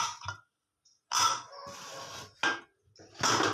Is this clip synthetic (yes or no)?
no